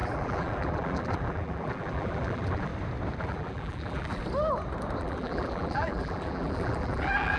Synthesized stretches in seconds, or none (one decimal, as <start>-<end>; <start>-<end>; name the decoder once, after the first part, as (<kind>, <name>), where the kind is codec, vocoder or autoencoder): 0.0-2.7 (vocoder, BigVGAN v2); 3.2-4.2; 5.0-7.4